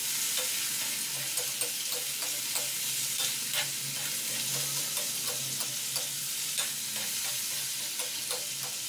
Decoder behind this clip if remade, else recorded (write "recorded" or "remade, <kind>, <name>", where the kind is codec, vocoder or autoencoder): recorded